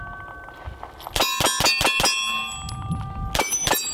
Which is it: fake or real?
real